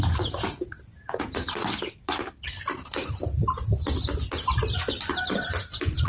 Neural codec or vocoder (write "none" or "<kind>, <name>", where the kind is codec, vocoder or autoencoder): none